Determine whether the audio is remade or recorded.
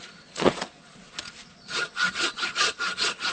remade